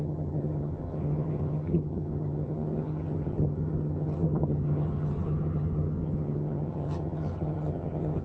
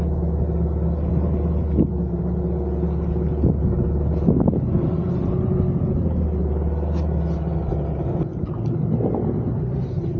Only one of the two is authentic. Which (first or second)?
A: second